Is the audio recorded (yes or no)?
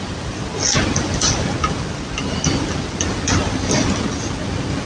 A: yes